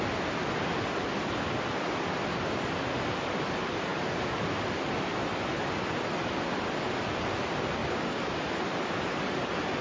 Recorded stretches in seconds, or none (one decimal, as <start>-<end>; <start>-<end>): 0.0-7.8; 8.4-9.8